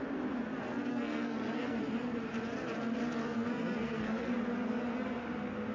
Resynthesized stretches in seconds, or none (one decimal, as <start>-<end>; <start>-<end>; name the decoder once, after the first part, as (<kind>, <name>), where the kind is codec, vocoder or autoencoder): 0.9-1.8 (codec, SNAC); 3.2-4.3